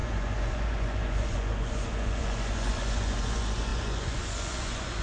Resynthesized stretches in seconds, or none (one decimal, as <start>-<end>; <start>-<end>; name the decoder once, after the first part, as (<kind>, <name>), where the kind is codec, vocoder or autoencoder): 0.0-5.0 (vocoder, Vocos)